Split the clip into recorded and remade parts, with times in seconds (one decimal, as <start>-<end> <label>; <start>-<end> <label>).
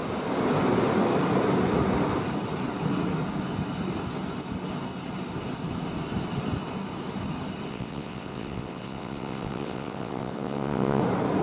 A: 0.0-7.7 recorded; 7.7-11.0 remade; 11.0-11.4 recorded